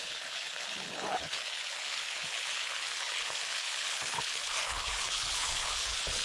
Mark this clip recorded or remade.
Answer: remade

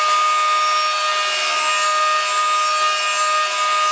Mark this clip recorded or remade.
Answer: recorded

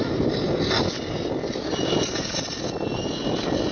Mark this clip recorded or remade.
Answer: recorded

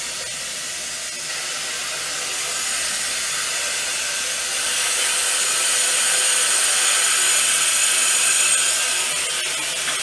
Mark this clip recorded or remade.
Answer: recorded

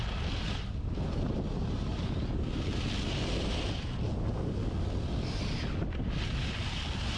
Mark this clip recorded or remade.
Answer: recorded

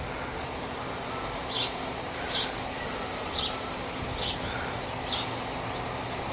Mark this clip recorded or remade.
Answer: recorded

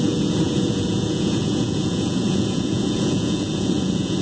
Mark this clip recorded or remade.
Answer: remade